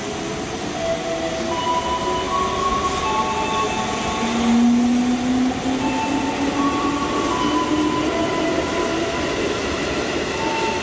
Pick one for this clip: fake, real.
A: real